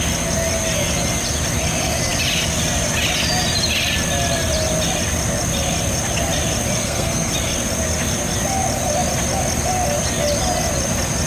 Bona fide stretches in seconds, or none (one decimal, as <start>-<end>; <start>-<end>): 0.0-6.8; 7.3-11.3